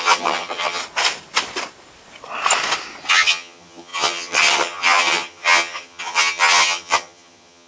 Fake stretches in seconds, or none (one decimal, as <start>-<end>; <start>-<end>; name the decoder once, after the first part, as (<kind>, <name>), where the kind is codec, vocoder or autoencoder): 0.0-0.8 (vocoder, HiFi-GAN); 3.1-7.7